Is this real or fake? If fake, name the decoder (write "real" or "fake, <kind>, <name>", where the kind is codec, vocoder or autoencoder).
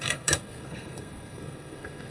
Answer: fake, codec, SNAC